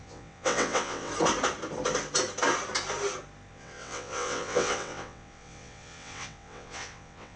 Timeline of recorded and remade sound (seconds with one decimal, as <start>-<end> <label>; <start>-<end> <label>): 0.0-1.1 remade; 1.1-3.5 recorded; 3.5-7.4 remade